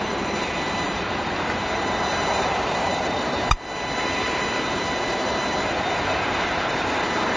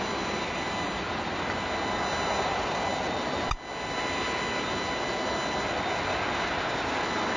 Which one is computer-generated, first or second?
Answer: first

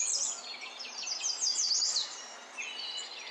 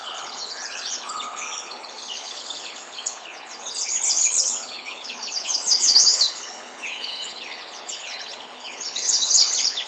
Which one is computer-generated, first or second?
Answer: second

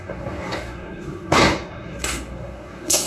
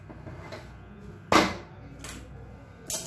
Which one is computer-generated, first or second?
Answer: first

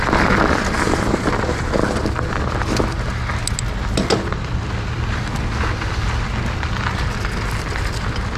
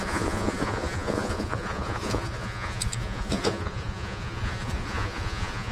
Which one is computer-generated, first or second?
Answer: second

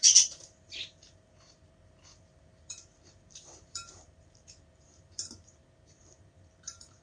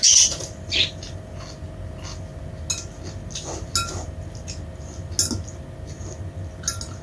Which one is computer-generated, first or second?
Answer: first